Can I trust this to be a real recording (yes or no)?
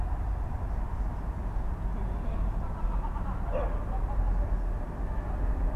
yes